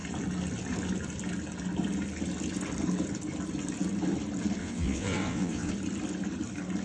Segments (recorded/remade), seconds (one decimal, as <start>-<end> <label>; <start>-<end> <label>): 0.0-4.6 recorded; 4.6-5.7 remade; 5.7-6.8 recorded